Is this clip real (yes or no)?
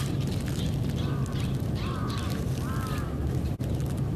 yes